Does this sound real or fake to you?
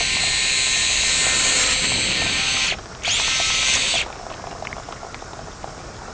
real